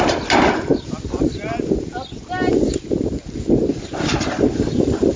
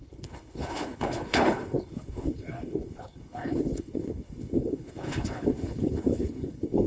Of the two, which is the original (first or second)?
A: first